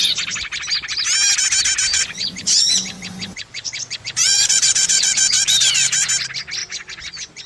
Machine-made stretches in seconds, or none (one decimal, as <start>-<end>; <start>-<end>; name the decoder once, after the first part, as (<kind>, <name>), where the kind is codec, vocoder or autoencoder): 1.9-6.1 (vocoder, Vocos); 6.6-7.5

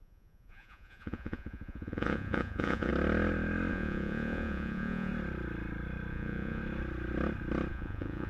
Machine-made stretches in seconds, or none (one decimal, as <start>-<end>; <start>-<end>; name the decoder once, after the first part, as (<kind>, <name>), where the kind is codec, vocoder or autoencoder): 0.0-2.9 (vocoder, Vocos); 3.7-5.1; 6.1-6.6; 7.7-8.3

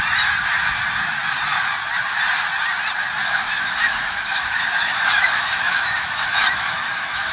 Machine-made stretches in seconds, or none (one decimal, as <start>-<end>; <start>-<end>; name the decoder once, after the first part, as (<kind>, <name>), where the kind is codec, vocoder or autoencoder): 3.2-7.3 (autoencoder, DAC-VAE)

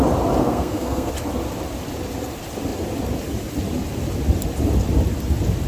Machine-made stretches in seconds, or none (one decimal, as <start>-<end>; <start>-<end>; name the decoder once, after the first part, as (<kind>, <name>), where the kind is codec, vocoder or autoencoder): 0.4-1.1 (codec, SNAC)

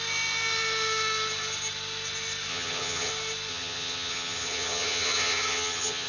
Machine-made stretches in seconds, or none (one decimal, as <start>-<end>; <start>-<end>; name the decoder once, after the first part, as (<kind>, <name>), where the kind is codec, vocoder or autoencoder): 2.5-3.1 (vocoder, HiFi-GAN); 3.5-6.1

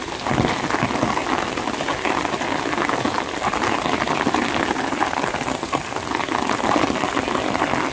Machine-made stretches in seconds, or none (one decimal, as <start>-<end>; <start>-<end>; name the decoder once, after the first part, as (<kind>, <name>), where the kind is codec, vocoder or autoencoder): none

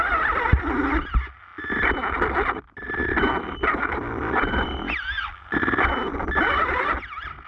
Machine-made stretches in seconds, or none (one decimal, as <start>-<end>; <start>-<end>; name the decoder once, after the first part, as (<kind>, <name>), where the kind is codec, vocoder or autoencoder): none

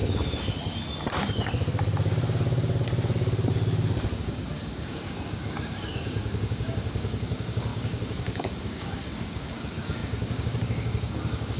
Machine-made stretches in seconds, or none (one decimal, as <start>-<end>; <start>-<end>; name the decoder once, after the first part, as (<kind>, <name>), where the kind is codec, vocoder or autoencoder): 4.2-11.6 (codec, DAC)